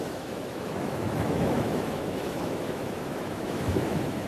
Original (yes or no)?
no